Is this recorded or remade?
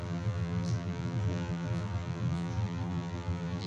remade